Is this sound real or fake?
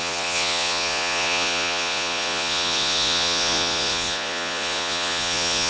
fake